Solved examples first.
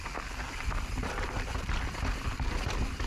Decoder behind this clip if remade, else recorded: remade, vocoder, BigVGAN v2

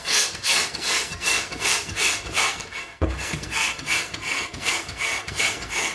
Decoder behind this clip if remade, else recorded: remade, codec, SNAC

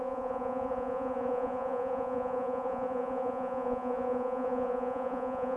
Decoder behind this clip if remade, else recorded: remade, vocoder, Vocos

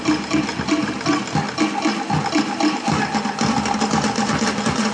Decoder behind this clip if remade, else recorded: recorded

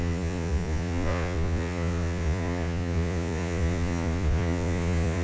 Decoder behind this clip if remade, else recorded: remade, vocoder, Vocos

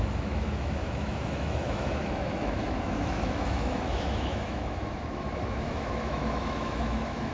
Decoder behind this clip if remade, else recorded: remade, autoencoder, DAC-VAE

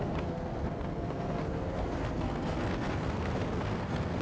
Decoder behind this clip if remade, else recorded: remade, codec, SNAC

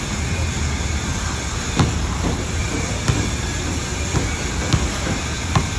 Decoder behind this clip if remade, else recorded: recorded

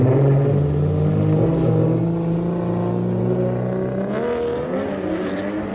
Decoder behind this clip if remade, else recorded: recorded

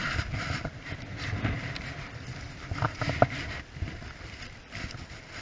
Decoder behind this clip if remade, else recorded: remade, vocoder, BigVGAN v2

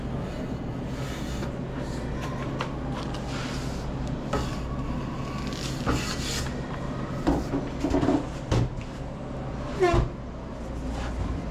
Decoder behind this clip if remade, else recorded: recorded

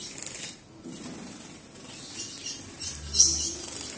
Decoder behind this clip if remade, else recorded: recorded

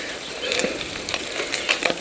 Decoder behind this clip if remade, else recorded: recorded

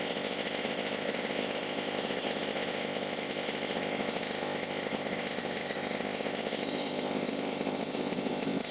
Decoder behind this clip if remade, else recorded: remade, codec, ZipCodec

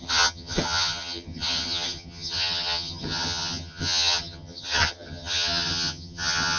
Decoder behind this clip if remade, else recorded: remade, vocoder, HiFi-GAN